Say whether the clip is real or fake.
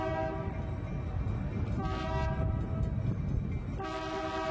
real